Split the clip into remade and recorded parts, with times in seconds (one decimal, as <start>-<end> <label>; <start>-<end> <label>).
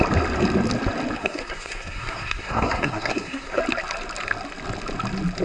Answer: 0.0-1.2 recorded; 1.2-3.6 remade; 3.6-5.4 recorded